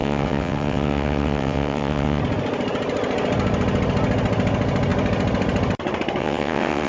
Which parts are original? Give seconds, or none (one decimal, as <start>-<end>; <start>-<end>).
2.2-6.2